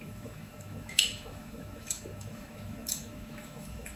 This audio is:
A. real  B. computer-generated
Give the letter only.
B